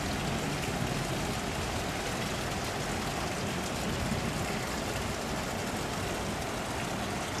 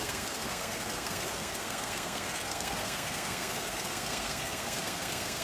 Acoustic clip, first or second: first